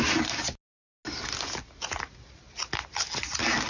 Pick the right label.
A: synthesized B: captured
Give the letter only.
B